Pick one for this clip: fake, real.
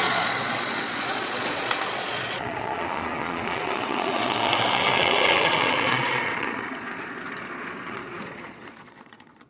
fake